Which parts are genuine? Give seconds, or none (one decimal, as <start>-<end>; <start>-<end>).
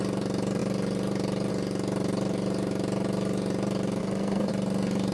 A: 0.0-4.0; 4.5-5.1